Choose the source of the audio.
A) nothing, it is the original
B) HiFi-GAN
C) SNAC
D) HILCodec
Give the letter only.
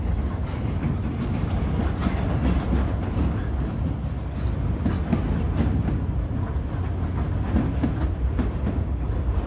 A